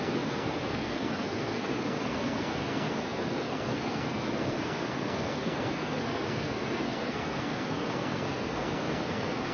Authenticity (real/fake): fake